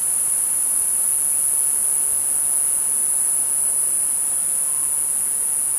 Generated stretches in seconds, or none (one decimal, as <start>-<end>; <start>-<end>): 0.0-1.1